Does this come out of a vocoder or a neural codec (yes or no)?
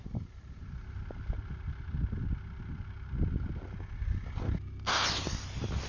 no